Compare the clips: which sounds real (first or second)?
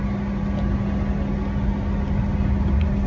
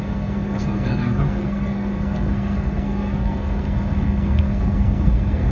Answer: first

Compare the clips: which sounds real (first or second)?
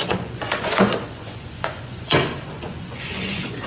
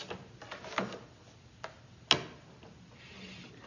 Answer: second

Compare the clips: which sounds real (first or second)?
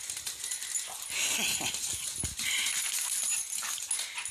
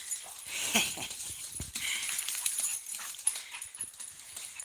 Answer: first